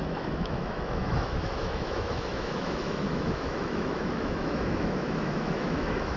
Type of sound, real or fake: fake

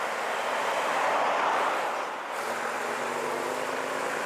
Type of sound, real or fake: real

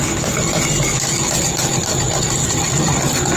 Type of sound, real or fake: real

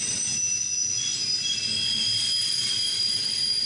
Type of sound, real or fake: real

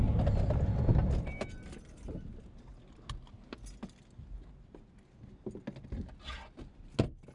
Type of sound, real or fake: real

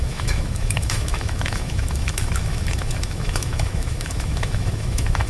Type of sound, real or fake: fake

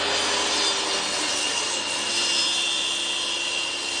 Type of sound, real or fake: real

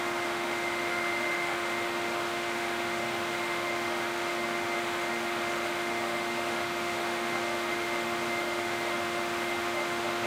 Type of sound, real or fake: fake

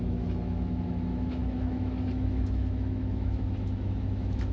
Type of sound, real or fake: fake